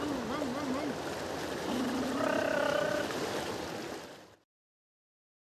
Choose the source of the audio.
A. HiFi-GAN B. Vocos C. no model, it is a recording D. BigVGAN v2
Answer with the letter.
C